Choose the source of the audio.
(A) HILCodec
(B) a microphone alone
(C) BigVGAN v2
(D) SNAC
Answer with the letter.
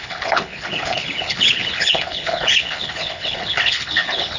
A